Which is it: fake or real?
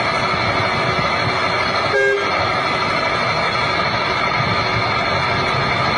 real